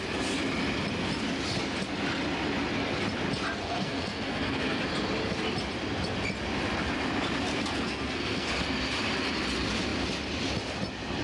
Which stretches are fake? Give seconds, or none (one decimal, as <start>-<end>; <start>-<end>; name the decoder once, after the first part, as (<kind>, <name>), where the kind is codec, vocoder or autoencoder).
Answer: 3.6-4.8 (codec, SNAC); 7.5-8.5